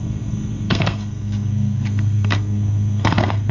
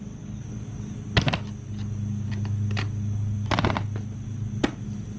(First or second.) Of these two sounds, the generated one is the first